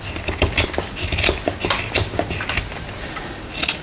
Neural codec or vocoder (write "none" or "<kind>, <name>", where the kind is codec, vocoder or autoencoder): none